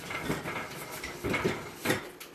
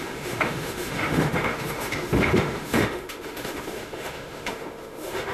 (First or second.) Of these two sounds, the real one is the first